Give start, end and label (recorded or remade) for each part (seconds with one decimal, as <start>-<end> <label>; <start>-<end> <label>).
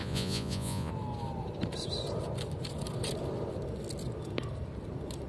0.0-0.9 remade; 0.9-5.3 recorded